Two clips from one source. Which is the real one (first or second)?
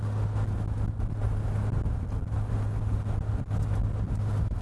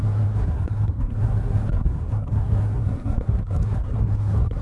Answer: first